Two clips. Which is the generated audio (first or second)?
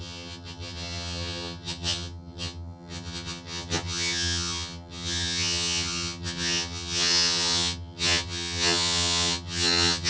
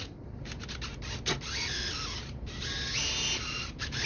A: first